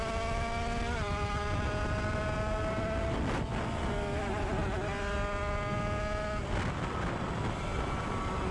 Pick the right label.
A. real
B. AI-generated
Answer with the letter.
A